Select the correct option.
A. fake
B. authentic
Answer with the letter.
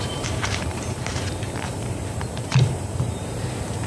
A